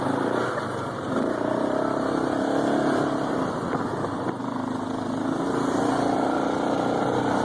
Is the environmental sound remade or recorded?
recorded